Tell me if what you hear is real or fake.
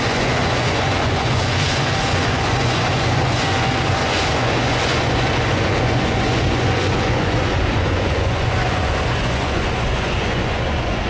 fake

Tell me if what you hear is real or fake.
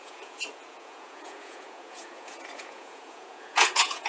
fake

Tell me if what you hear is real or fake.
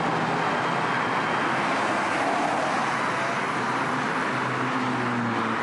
real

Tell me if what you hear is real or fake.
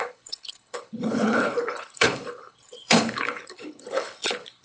fake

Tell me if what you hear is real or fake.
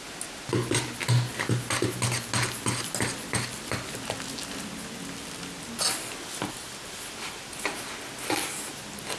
real